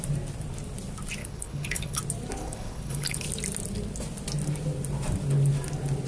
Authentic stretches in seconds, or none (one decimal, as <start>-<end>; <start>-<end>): 0.0-1.2; 2.0-2.4; 3.2-6.1